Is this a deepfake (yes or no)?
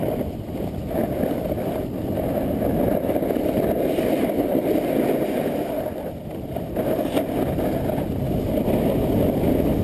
no